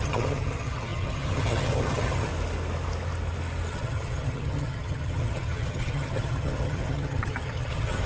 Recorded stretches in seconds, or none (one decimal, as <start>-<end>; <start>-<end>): 2.3-3.7